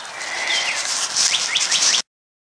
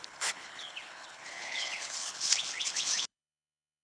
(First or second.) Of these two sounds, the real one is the first